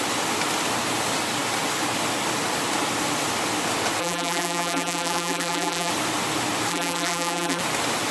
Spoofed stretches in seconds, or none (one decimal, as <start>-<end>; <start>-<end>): 4.0-5.9; 6.7-7.6